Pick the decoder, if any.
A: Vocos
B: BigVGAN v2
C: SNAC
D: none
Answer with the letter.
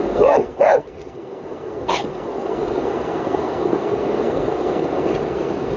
C